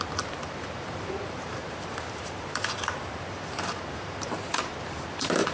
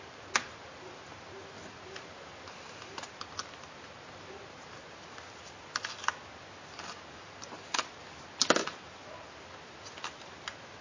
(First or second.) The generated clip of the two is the first